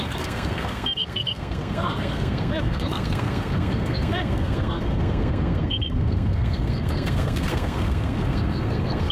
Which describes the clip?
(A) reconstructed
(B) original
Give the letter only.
A